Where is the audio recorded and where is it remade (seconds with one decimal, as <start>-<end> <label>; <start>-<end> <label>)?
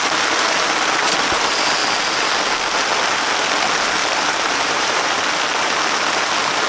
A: 0.0-4.0 recorded; 4.0-5.1 remade; 5.1-6.7 recorded